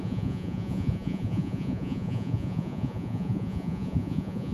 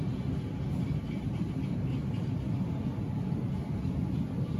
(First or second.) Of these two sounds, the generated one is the first